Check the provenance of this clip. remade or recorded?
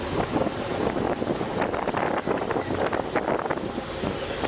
recorded